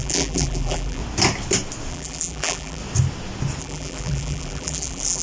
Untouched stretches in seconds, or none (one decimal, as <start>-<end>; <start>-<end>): 1.0-1.9; 2.8-3.6